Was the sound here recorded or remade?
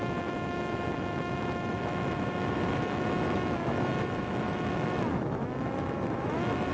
remade